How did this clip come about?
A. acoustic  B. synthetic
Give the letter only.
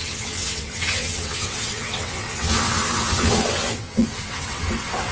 B